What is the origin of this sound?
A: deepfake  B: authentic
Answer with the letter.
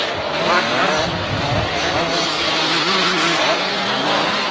B